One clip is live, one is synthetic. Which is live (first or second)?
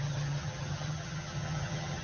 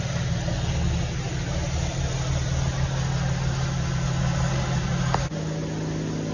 second